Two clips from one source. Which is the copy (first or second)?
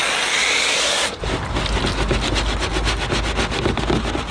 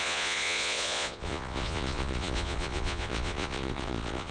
second